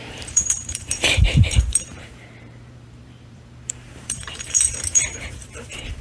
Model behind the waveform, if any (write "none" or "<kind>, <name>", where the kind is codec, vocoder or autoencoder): vocoder, BigVGAN v2